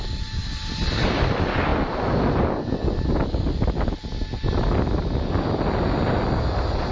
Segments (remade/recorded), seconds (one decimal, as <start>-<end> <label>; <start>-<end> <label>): 0.0-6.9 recorded